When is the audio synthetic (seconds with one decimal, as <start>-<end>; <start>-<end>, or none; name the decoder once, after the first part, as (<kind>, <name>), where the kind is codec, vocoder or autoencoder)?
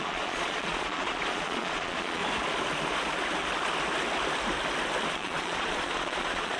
0.0-2.2 (vocoder, Vocos); 5.1-6.6